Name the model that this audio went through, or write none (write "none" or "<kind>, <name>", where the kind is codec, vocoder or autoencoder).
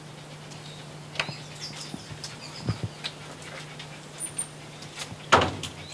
none